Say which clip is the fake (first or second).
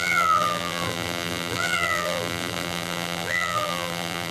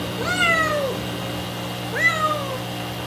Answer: first